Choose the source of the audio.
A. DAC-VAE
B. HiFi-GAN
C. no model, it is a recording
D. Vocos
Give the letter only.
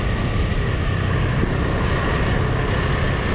C